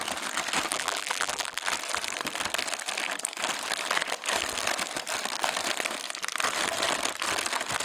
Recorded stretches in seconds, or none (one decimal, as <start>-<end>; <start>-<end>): 0.0-0.7; 1.6-7.8